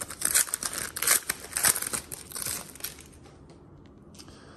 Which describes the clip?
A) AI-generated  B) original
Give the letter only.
B